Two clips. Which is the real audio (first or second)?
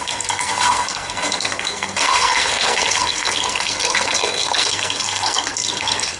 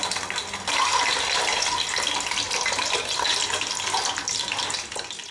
second